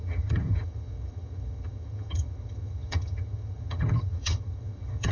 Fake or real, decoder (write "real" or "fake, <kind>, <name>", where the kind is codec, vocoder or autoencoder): fake, vocoder, HiFi-GAN